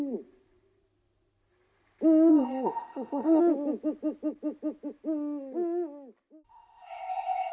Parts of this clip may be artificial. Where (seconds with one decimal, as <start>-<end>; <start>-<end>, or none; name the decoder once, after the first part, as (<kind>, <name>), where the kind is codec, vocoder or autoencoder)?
2.3-3.4 (codec, ZipCodec); 6.5-7.5